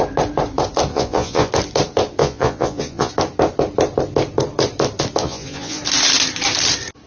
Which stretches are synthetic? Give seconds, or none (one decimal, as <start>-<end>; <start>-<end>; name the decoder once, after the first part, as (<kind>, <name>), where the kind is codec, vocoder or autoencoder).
0.9-1.5 (vocoder, Vocos); 2.2-3.1; 5.2-5.8